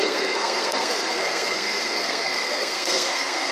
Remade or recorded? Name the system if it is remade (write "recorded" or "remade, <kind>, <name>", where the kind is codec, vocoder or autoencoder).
remade, codec, SNAC